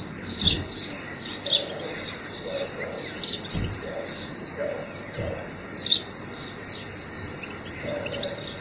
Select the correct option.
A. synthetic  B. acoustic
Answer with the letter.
B